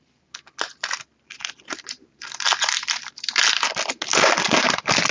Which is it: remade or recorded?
recorded